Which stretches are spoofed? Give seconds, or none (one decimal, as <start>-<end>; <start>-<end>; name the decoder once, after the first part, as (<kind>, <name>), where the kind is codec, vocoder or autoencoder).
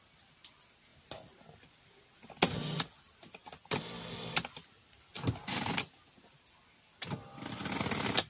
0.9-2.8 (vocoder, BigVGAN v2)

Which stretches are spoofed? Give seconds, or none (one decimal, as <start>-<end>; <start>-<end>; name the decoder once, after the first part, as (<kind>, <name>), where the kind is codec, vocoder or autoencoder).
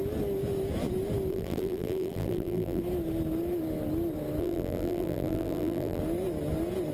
1.3-2.8 (vocoder, BigVGAN v2); 4.4-6.0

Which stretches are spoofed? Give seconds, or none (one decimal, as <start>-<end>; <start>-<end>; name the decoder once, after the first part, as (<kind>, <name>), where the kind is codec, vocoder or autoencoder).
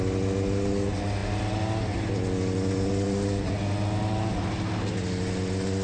none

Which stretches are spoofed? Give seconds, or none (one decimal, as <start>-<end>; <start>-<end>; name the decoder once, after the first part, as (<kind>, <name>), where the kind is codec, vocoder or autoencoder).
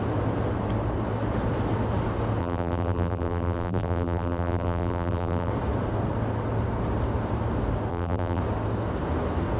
2.4-5.5 (vocoder, BigVGAN v2); 7.9-8.4